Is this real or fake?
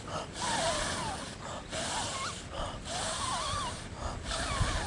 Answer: real